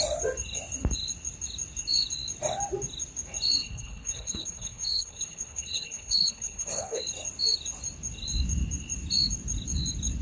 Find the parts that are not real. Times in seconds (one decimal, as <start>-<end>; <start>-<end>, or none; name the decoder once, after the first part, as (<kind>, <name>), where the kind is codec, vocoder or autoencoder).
3.6-7.0 (codec, HILCodec)